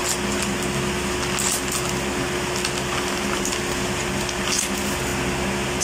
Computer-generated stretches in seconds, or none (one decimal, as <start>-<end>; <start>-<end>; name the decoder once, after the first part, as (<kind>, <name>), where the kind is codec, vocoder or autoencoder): none